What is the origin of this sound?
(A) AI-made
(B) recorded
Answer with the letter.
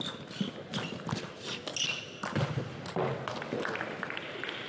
B